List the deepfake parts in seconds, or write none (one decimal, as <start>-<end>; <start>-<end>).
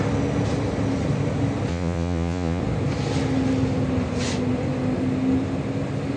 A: 1.7-2.6